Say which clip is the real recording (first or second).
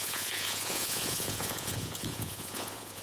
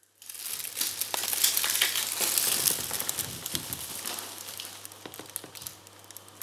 second